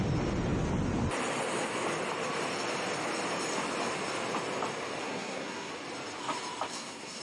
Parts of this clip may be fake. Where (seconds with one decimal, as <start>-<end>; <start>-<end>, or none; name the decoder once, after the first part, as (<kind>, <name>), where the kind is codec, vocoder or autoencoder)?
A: 5.0-5.7 (codec, SNAC); 6.7-7.2